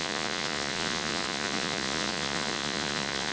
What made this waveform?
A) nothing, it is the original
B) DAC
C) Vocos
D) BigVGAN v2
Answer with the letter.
C